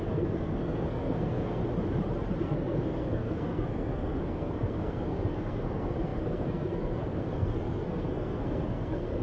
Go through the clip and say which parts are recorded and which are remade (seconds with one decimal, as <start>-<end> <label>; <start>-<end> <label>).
0.0-1.6 remade; 1.6-2.4 recorded; 2.4-9.2 remade